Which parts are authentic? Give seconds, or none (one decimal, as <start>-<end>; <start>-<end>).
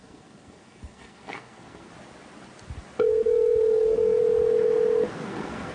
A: 1.9-3.1; 4.2-5.1